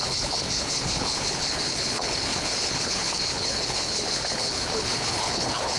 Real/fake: fake